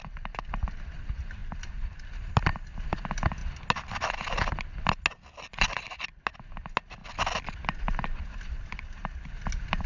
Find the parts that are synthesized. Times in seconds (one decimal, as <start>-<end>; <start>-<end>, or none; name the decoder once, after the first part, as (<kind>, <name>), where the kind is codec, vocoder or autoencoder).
none